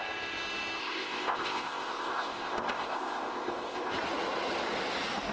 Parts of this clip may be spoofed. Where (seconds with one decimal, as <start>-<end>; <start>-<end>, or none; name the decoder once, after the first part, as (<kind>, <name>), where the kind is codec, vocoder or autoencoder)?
0.8-3.9 (codec, ZipCodec)